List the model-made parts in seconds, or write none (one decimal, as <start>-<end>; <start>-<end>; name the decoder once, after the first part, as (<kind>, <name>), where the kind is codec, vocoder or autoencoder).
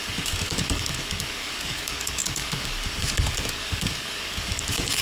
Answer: 0.0-5.0 (codec, DAC)